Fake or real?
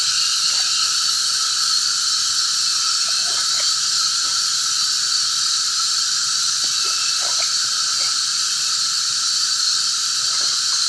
real